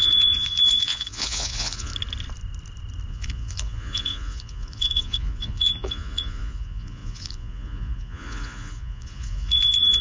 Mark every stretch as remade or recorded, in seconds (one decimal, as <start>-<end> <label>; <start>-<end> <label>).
0.0-1.9 remade; 1.9-3.1 recorded; 3.1-10.0 remade